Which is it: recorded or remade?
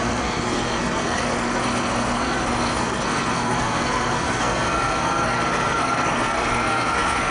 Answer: remade